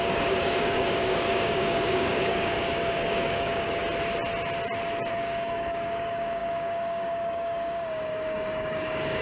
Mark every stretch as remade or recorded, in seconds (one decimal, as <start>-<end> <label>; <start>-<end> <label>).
0.0-3.8 remade; 3.8-5.1 recorded; 5.1-9.2 remade